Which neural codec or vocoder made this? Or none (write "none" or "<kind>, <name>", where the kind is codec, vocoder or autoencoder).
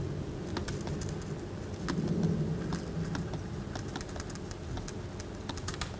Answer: none